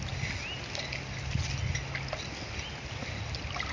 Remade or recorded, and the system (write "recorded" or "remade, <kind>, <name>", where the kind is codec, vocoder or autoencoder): recorded